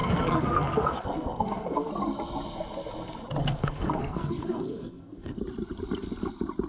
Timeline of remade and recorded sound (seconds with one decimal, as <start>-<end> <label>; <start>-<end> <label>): 0.0-1.9 remade; 1.9-3.4 recorded; 3.4-5.4 remade; 5.4-6.7 recorded